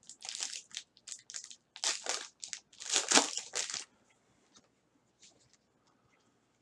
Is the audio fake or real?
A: real